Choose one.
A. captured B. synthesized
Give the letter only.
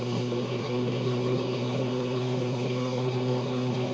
B